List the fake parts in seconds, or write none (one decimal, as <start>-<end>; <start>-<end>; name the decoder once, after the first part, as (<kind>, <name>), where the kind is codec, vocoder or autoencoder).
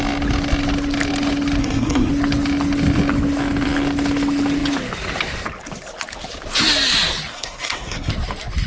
1.6-2.1 (codec, SNAC); 7.3-8.1